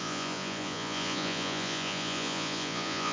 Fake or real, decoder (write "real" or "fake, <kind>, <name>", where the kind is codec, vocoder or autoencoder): fake, vocoder, Vocos